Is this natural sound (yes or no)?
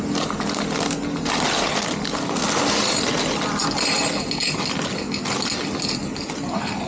yes